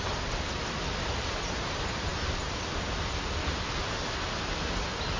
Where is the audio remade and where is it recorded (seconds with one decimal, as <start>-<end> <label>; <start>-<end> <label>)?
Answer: 0.0-5.2 recorded